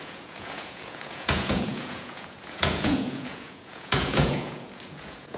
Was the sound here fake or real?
fake